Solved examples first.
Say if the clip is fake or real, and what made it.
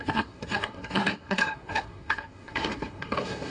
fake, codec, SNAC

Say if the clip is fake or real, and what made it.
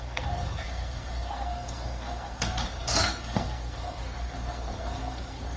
fake, codec, SNAC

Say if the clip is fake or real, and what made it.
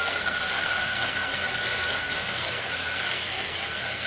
fake, codec, SNAC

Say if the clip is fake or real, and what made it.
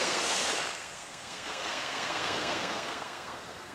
fake, codec, SNAC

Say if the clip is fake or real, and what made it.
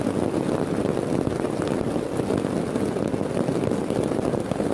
real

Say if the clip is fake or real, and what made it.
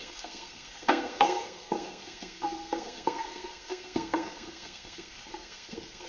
fake, codec, SNAC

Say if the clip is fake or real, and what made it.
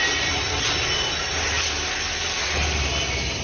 real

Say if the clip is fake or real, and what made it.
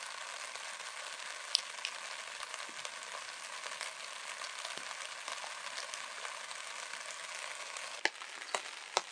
real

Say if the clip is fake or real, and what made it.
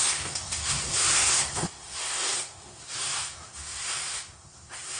fake, codec, SNAC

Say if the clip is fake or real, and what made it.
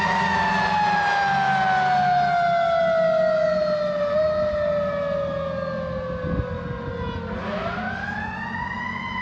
real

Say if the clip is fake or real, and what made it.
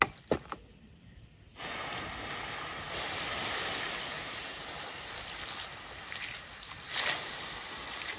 real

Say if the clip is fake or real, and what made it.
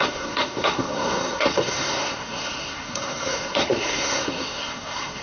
fake, codec, SNAC